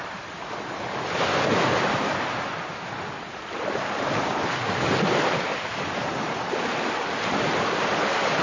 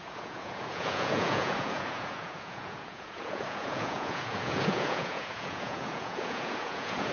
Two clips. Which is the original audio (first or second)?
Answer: first